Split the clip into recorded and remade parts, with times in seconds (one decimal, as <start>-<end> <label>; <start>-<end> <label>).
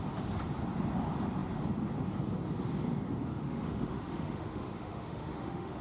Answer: 0.0-3.3 recorded; 3.3-5.8 remade